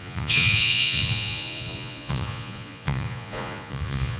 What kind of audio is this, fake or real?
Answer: fake